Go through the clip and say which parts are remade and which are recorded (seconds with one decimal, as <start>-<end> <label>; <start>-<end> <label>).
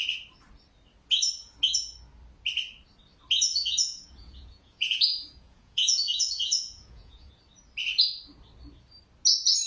0.0-3.5 recorded; 3.5-7.3 remade; 7.3-9.7 recorded